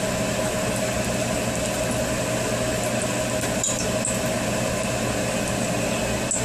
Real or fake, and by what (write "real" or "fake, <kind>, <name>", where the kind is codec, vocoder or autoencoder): real